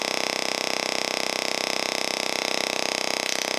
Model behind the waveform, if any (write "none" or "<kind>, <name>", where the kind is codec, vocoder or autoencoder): none